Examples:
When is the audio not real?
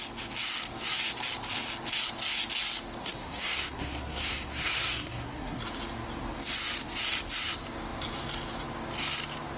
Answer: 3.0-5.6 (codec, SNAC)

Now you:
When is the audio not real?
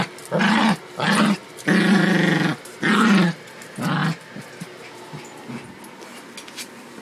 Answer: none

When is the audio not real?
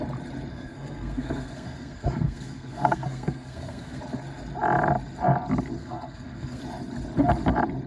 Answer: 0.5-4.0 (codec, SNAC); 5.8-6.6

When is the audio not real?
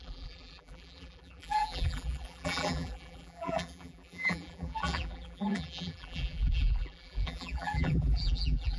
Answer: 0.0-8.8 (vocoder, BigVGAN v2)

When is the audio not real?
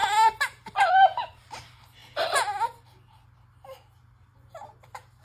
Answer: none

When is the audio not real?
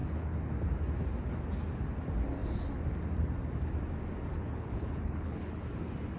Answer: 0.0-0.5 (codec, HILCodec); 4.3-5.6